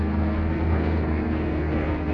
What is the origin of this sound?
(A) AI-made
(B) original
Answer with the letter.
A